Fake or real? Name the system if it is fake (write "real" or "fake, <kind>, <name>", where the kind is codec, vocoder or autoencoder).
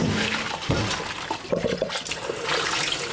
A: real